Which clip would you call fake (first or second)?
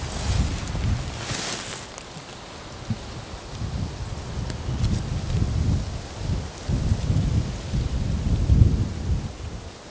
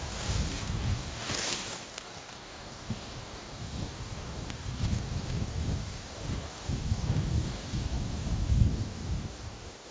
second